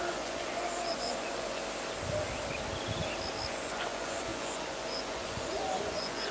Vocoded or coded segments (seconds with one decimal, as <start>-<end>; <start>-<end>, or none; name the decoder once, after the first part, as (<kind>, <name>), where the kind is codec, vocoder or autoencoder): 0.0-1.6 (vocoder, Vocos); 3.5-6.3